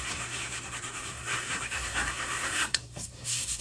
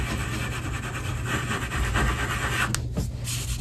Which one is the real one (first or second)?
second